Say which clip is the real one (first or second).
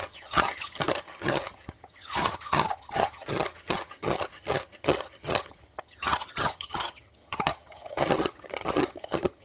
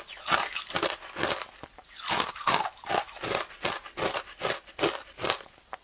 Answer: second